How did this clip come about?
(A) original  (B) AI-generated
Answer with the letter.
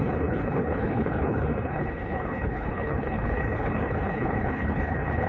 B